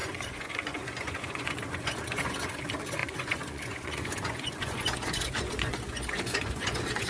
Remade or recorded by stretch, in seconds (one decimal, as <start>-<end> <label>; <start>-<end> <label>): 0.0-2.6 remade; 2.6-3.0 recorded; 3.0-7.1 remade

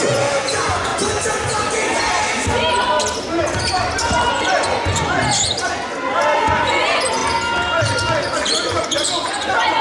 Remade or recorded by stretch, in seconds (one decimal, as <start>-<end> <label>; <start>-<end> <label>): 0.0-0.9 remade; 0.9-4.3 recorded; 4.3-5.2 remade; 5.2-6.4 recorded; 6.4-7.2 remade; 7.2-8.8 recorded; 8.8-9.8 remade